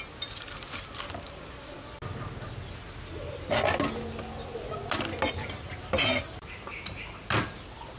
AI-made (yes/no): no